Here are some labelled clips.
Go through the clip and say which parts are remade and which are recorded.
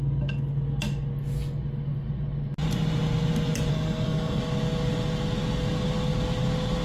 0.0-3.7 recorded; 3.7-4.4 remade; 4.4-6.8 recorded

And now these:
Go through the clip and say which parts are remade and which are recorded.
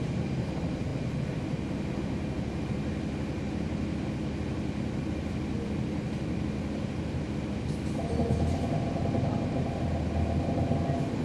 0.0-11.2 recorded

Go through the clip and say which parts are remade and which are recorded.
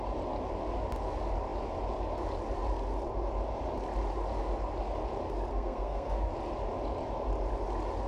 0.0-5.5 recorded; 5.5-6.3 remade; 6.3-8.1 recorded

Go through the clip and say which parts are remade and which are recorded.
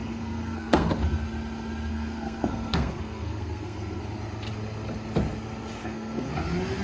0.0-0.9 remade; 0.9-1.9 recorded; 1.9-4.0 remade; 4.0-5.8 recorded; 5.8-6.3 remade; 6.3-6.8 recorded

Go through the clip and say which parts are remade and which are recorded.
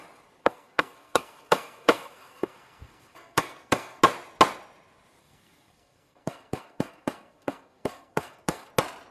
0.0-0.4 recorded; 0.4-4.0 remade; 4.0-5.2 recorded; 5.2-8.7 remade; 8.7-9.1 recorded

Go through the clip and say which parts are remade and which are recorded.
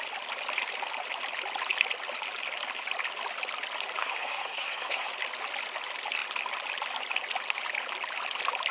0.0-4.0 recorded; 4.0-5.1 remade; 5.1-8.7 recorded